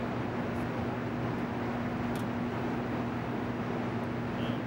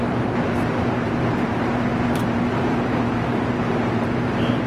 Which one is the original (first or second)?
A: first